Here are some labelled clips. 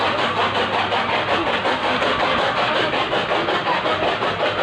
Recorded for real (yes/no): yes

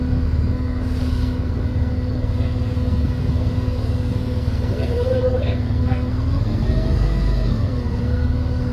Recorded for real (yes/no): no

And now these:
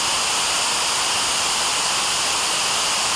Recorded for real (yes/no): yes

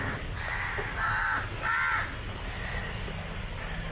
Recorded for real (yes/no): yes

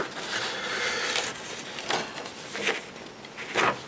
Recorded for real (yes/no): yes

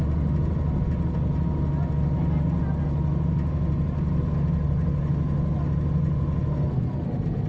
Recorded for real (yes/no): yes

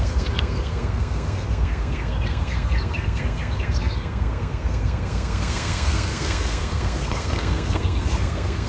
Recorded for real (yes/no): no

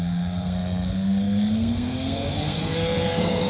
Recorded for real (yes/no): no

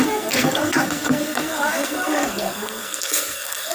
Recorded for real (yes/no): no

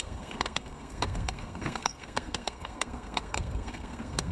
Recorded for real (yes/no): no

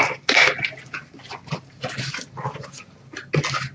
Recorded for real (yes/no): yes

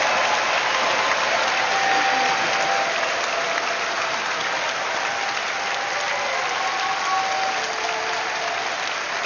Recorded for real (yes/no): yes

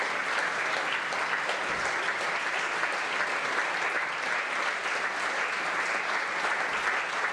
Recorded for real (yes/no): yes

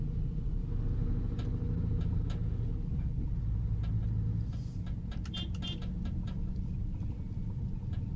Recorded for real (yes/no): yes